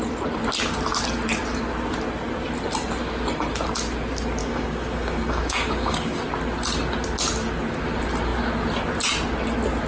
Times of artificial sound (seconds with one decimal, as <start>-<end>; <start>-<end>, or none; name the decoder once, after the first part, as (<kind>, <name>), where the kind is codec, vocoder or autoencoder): 4.4-6.2 (codec, DAC)